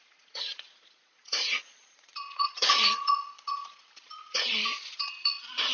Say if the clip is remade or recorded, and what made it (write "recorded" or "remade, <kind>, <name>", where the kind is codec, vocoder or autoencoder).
remade, vocoder, Vocos